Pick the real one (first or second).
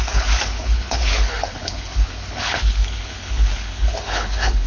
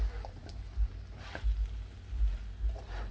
second